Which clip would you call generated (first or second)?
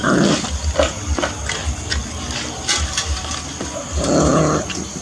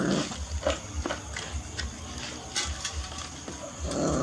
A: first